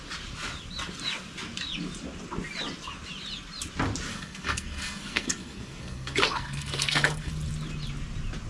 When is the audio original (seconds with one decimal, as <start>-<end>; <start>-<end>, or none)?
0.0-4.1; 7.3-8.5